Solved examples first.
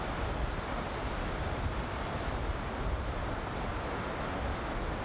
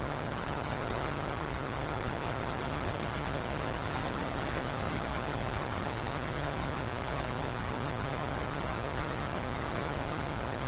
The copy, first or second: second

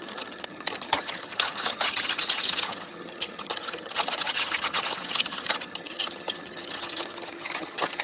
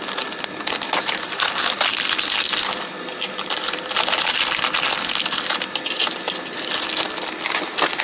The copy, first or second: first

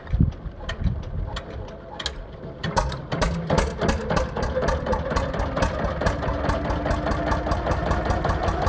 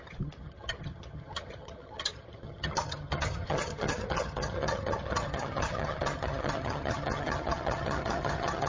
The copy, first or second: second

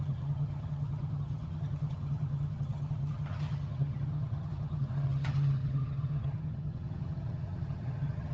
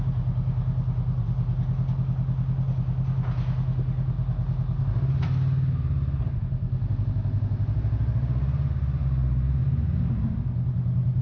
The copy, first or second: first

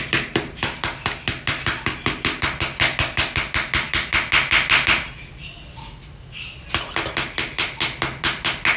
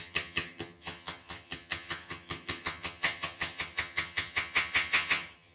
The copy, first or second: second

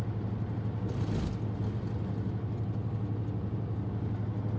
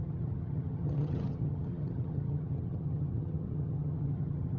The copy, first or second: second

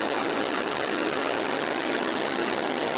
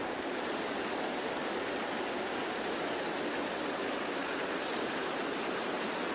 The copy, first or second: first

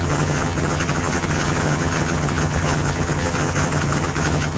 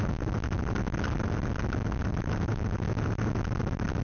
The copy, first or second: first